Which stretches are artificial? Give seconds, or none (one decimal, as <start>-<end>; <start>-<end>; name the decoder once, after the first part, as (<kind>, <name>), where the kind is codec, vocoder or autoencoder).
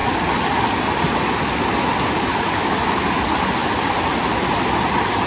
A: none